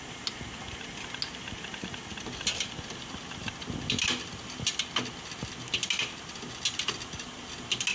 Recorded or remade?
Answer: recorded